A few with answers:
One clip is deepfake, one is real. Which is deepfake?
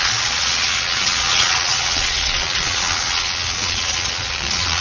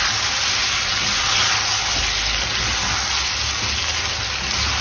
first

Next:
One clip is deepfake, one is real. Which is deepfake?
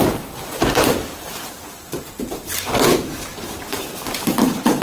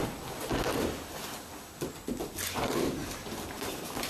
first